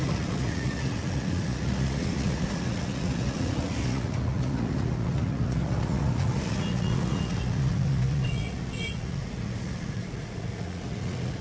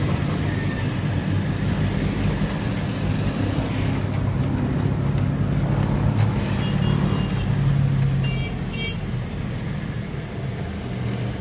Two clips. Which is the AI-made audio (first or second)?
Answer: first